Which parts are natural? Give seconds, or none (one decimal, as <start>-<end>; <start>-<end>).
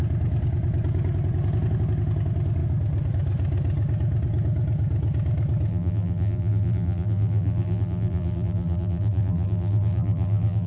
0.0-5.7